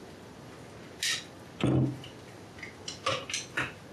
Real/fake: real